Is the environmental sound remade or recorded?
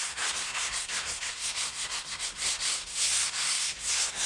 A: remade